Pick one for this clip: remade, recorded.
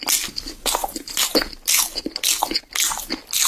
recorded